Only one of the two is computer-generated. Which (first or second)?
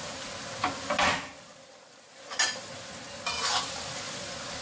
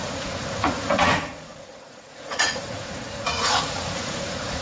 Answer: second